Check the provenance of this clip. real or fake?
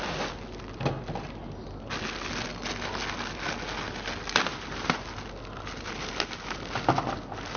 real